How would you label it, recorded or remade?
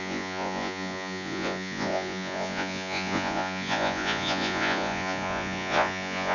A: remade